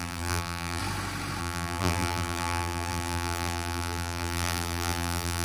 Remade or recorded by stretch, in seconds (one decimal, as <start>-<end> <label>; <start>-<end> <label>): 0.0-0.8 remade; 0.8-1.4 recorded; 1.4-5.4 remade